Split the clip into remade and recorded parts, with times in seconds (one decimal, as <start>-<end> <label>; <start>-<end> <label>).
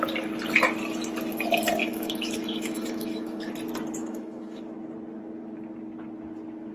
0.0-1.8 recorded; 1.8-3.5 remade; 3.5-4.0 recorded; 4.0-4.6 remade; 4.6-6.7 recorded